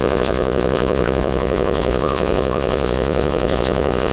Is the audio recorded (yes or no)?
no